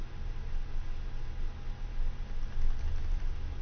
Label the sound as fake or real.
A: real